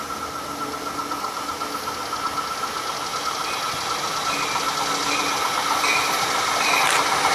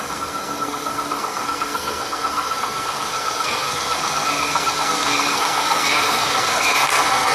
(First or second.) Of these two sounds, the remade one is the second